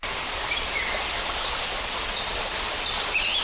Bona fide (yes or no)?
yes